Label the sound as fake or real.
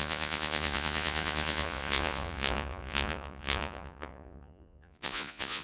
fake